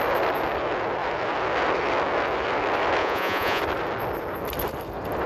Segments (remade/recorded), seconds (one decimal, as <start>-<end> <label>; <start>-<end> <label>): 0.0-3.0 recorded; 3.0-3.6 remade; 3.6-5.3 recorded